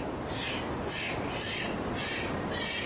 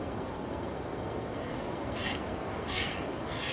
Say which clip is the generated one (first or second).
second